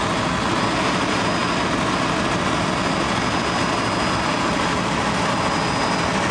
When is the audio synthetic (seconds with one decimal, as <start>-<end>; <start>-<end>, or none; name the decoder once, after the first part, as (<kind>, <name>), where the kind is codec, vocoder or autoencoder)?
none